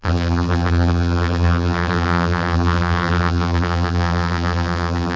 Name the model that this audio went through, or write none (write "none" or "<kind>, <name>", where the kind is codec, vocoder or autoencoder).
vocoder, BigVGAN v2